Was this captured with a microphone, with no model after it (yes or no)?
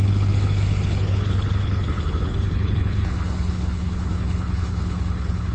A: no